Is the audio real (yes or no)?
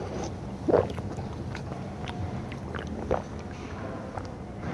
yes